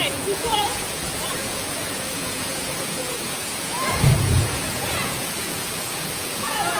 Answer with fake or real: fake